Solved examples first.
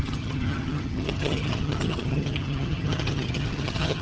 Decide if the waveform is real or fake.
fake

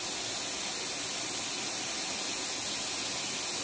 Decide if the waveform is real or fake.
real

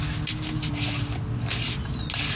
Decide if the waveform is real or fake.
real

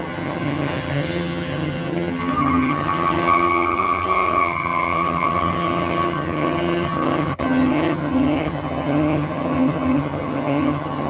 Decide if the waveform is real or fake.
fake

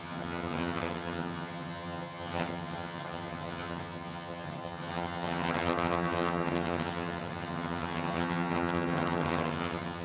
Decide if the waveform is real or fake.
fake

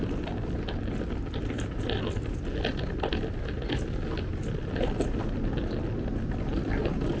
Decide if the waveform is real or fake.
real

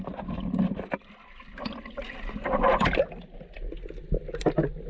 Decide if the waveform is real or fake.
real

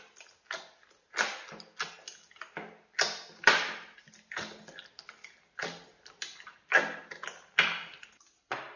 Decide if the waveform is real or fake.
real